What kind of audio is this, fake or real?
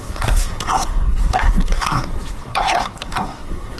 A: fake